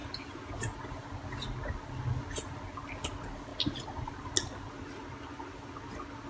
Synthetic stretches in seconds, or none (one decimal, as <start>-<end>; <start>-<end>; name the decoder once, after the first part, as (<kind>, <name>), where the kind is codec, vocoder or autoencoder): 0.0-0.5 (vocoder, BigVGAN v2); 3.5-4.1